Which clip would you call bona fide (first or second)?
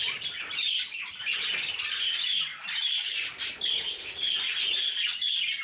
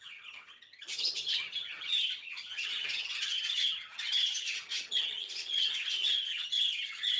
first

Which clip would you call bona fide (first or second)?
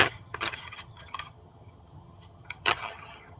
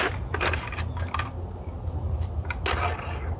second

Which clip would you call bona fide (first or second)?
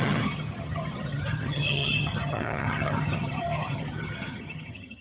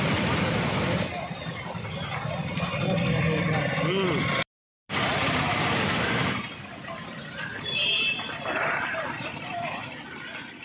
second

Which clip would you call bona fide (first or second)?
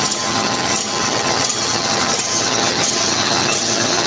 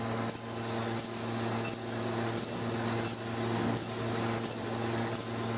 second